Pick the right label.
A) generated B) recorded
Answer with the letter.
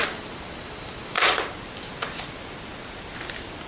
B